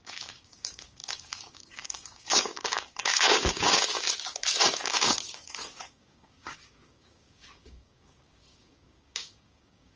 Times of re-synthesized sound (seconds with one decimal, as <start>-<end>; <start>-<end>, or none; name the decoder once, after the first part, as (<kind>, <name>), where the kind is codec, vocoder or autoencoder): 0.0-10.0 (codec, DAC)